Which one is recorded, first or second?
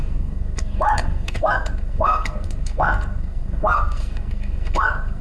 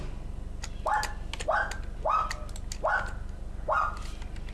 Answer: second